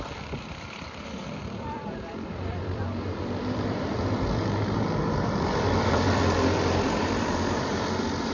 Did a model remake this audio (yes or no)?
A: yes